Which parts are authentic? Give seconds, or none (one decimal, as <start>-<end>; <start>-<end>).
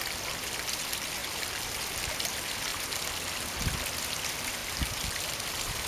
0.0-4.6; 5.5-5.9